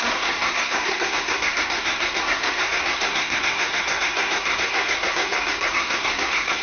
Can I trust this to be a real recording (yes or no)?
no